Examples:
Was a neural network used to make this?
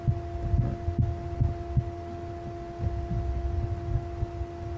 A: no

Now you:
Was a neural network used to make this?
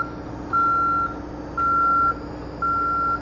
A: no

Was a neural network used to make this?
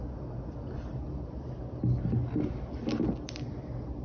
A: no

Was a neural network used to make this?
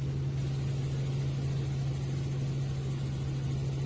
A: no